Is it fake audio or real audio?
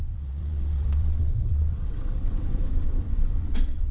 fake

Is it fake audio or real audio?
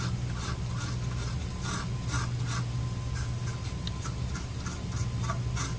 real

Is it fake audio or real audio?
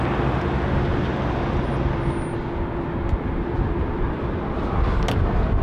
real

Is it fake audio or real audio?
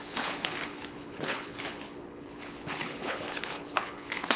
fake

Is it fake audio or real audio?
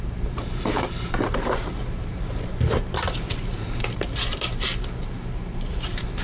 fake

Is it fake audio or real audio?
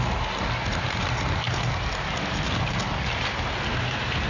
real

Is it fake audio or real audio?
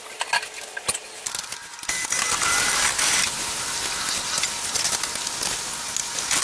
real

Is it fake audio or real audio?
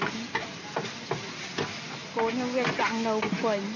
real